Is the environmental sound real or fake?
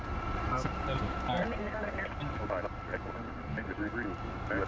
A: real